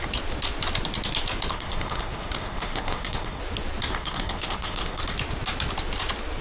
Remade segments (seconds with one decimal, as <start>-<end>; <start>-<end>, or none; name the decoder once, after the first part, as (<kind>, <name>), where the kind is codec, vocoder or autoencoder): 1.5-3.4 (codec, SNAC); 3.9-5.0

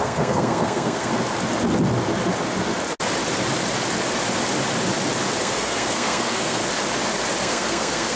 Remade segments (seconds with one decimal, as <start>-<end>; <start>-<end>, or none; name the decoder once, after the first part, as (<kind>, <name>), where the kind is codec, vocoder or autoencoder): 0.0-1.1 (codec, SNAC); 5.4-6.6; 7.4-8.2

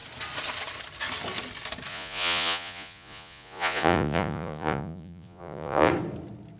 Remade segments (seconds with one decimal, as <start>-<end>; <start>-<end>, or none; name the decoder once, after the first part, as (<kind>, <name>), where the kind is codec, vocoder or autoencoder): 1.9-5.9 (vocoder, Vocos)

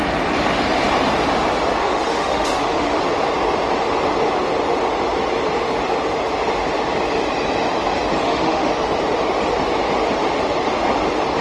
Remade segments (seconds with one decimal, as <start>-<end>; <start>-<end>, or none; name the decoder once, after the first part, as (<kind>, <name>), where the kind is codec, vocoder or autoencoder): 1.8-3.0 (autoencoder, DAC-VAE); 8.2-8.7

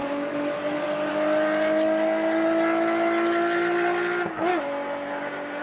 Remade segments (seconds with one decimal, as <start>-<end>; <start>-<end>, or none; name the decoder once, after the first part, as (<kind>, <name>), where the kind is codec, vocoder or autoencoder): 4.5-5.6 (codec, DAC)

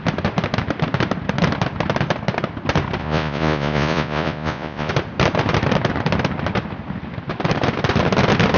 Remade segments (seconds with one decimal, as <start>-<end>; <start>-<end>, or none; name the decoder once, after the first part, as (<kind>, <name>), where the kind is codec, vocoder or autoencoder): 3.0-4.9 (vocoder, Vocos)